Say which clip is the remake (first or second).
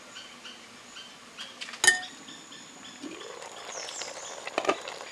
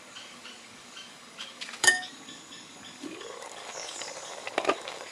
second